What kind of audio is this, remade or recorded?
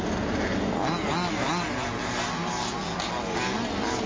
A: recorded